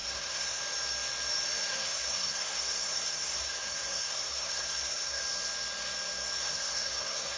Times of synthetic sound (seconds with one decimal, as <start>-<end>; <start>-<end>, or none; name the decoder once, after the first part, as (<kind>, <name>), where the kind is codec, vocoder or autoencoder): 0.0-0.6 (codec, SNAC); 1.7-5.2; 6.4-7.4